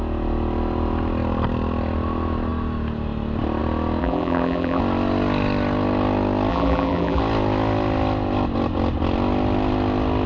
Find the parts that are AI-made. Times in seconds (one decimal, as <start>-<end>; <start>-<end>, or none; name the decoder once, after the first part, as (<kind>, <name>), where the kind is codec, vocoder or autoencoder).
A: 4.0-4.8 (vocoder, BigVGAN v2); 6.5-7.2